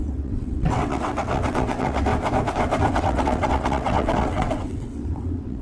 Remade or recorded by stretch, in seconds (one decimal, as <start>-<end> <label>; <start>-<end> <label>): 0.0-2.1 remade; 2.1-2.9 recorded; 2.9-5.6 remade